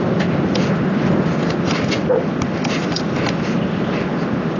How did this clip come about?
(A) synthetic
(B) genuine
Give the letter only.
B